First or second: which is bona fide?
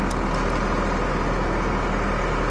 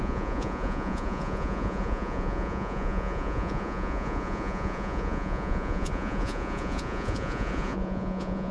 first